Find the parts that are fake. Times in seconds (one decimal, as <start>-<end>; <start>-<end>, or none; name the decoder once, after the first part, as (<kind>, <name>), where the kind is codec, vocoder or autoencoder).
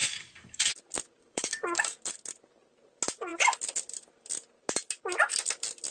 0.0-0.7 (codec, DAC); 1.2-2.0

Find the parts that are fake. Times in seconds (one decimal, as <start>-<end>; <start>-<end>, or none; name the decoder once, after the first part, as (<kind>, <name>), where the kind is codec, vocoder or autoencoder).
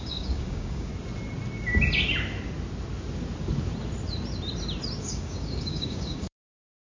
0.0-0.9 (codec, DAC); 5.0-6.9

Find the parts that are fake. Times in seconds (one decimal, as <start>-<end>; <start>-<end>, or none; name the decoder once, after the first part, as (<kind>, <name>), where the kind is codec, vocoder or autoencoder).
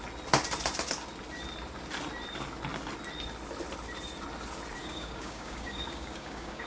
4.8-6.7 (codec, DAC)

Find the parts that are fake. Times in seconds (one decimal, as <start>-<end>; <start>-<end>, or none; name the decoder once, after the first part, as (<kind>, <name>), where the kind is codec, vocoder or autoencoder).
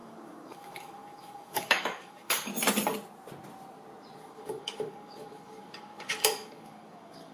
0.0-2.5 (codec, DAC); 4.2-7.3